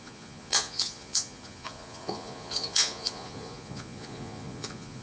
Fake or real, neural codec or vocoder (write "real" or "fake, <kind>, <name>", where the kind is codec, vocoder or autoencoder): fake, vocoder, Vocos